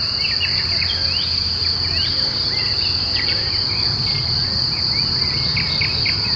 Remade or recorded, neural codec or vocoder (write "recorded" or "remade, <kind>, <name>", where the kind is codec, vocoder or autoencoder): recorded